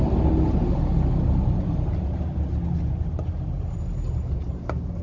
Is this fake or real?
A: real